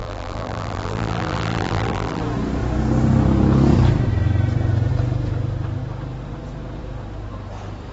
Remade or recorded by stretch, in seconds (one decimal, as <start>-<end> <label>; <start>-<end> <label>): 0.0-2.2 remade; 2.2-7.9 recorded

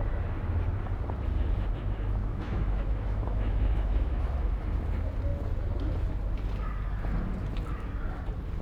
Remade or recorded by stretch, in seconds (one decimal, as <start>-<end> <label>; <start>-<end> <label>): 0.0-2.2 recorded; 2.2-4.2 remade; 4.2-8.6 recorded

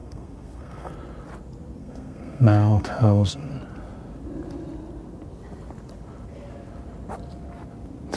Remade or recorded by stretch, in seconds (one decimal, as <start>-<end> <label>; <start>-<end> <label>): 0.0-0.9 remade; 0.9-1.8 recorded; 1.8-3.5 remade; 3.5-8.2 recorded

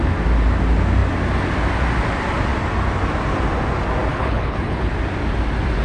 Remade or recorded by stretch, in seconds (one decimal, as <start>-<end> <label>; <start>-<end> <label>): 0.0-4.1 recorded; 4.1-4.9 remade; 4.9-5.8 recorded

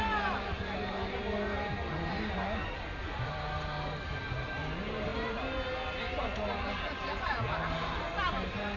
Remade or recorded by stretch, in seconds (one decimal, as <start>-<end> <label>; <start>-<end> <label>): 0.0-8.8 recorded

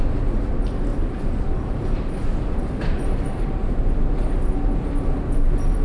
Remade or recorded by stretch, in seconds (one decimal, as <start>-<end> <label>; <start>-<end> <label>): 0.0-0.9 recorded; 0.9-4.4 remade; 4.4-5.8 recorded